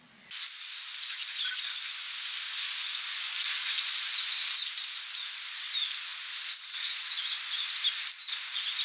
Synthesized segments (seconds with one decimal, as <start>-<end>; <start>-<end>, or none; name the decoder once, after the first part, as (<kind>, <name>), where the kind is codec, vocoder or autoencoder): 6.1-7.2 (vocoder, Vocos)